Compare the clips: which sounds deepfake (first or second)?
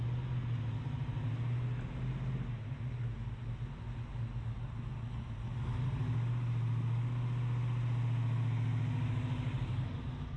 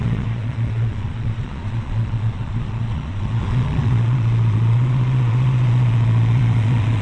second